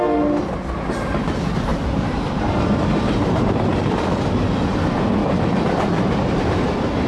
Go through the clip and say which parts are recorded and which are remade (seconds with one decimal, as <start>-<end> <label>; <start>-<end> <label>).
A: 0.0-1.7 recorded; 1.7-3.9 remade; 3.9-5.2 recorded; 5.2-7.1 remade